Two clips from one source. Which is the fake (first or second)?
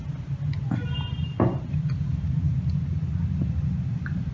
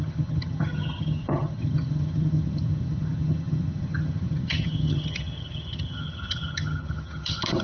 second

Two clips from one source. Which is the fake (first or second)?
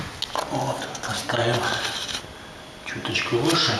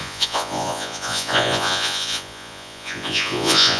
second